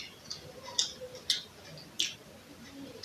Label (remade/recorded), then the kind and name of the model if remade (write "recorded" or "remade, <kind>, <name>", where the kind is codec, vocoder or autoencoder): recorded